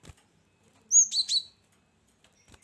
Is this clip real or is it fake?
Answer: real